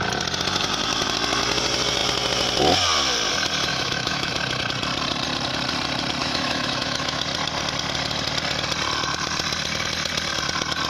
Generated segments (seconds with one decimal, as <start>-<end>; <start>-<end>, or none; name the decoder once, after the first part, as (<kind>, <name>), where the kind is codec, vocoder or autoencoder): 3.7-4.3 (autoencoder, DAC-VAE); 6.2-7.2